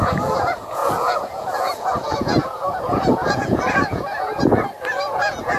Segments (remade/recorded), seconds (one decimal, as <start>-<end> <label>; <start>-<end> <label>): 0.0-4.3 remade; 4.3-4.9 recorded; 4.9-5.6 remade